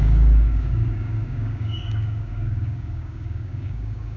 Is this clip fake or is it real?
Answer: fake